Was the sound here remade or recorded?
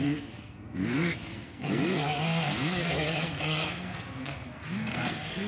remade